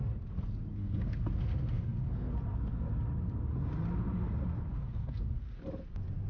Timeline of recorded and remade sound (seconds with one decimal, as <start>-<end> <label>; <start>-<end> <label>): 0.0-0.7 recorded; 0.7-2.3 remade; 2.3-4.7 recorded; 4.7-5.6 remade; 5.6-6.3 recorded